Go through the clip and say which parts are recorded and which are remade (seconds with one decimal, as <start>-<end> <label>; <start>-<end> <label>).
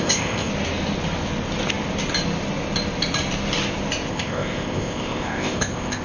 0.0-0.5 remade; 0.5-4.1 recorded; 4.1-6.0 remade